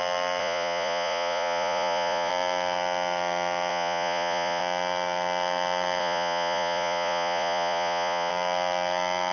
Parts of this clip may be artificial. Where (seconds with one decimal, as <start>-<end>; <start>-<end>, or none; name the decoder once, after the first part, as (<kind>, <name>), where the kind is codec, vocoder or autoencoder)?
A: 0.4-2.3 (vocoder, Vocos); 3.7-4.6; 6.0-8.3

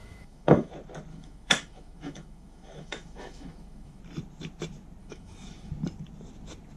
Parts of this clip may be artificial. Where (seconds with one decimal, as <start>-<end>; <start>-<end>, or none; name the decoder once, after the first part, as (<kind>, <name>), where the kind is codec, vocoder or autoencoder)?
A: 0.0-0.7 (autoencoder, DAC-VAE); 1.1-4.0; 5.0-5.7